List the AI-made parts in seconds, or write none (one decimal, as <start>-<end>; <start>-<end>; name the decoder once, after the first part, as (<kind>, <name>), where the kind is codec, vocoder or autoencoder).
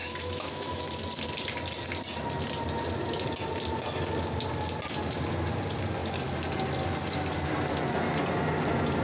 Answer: 0.0-0.8 (autoencoder, DAC-VAE)